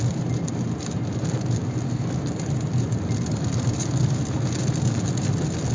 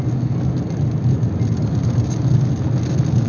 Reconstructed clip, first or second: first